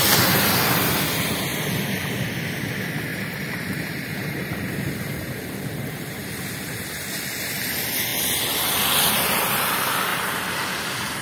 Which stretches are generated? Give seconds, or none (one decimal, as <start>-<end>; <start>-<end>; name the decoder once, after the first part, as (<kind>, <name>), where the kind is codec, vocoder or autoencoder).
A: 3.1-7.2 (vocoder, BigVGAN v2); 10.1-11.2